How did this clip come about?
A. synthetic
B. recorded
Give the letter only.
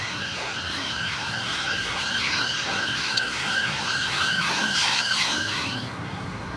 A